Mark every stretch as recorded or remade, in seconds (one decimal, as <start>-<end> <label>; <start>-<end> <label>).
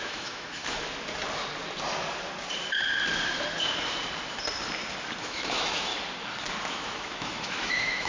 0.0-0.6 remade; 0.6-5.2 recorded; 5.2-5.9 remade; 5.9-6.7 recorded; 6.7-8.1 remade